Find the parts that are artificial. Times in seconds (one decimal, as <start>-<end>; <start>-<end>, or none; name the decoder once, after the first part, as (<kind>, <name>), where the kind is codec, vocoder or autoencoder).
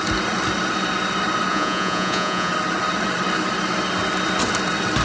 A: 1.5-2.5 (vocoder, Vocos)